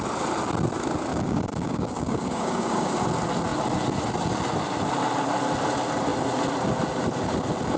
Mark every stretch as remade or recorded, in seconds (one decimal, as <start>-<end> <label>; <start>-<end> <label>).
0.0-1.1 recorded; 1.1-2.9 remade; 2.9-7.8 recorded